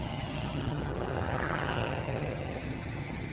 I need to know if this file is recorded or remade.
remade